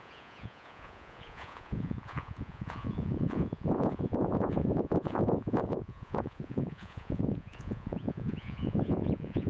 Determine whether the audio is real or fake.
fake